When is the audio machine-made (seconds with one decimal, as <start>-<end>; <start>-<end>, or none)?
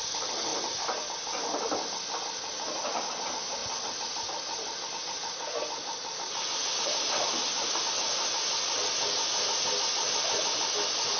none